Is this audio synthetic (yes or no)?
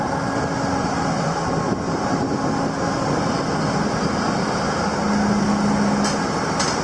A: no